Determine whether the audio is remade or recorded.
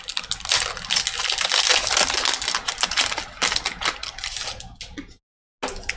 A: recorded